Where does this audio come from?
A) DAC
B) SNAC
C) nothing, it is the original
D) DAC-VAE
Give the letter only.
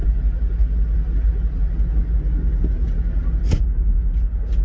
C